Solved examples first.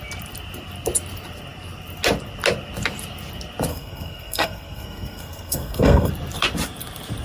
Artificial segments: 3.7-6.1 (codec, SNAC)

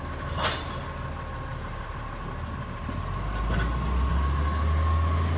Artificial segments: none

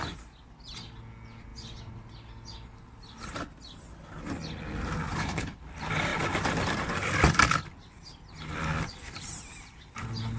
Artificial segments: 5.1-5.6 (codec, HILCodec)

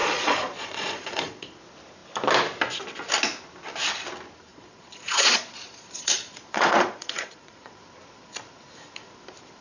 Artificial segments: 0.0-1.6 (vocoder, Vocos); 4.5-7.8

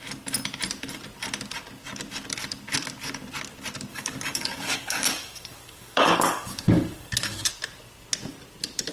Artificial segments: 3.9-7.5 (codec, DAC)

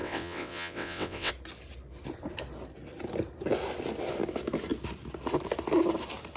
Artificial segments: 0.0-1.3 (vocoder, WaveNeXt)

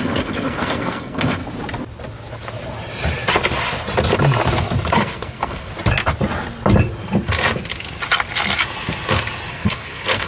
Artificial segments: 0.0-1.4 (codec, SNAC); 4.9-5.7; 9.5-10.3